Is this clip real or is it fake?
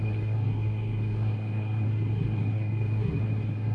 fake